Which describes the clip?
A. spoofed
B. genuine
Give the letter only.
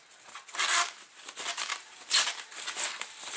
B